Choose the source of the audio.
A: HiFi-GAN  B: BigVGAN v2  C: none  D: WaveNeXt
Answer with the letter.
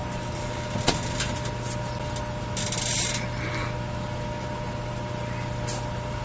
C